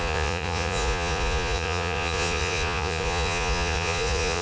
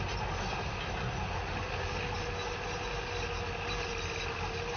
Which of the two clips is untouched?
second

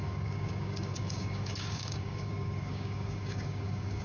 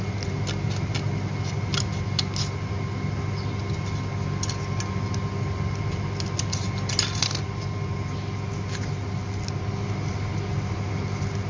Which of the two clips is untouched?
second